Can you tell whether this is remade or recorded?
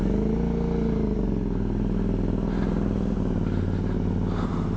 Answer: recorded